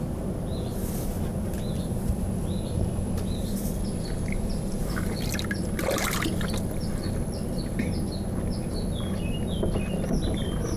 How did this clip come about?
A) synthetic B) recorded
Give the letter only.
B